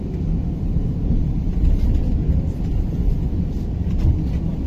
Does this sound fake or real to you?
real